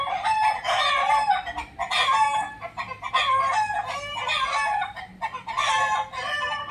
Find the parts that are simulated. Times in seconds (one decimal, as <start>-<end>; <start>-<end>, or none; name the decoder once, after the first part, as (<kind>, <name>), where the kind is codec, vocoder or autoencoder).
none